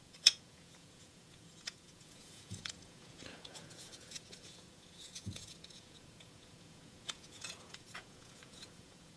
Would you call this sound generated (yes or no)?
yes